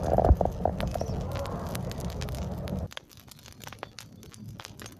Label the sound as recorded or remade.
recorded